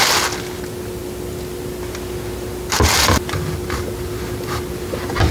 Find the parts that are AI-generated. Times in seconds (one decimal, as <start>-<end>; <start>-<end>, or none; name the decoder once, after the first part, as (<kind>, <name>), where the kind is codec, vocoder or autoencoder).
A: none